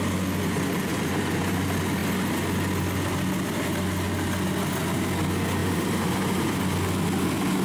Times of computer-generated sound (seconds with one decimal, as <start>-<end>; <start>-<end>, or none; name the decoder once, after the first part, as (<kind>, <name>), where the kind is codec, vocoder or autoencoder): 0.9-1.6 (vocoder, BigVGAN v2); 5.6-6.6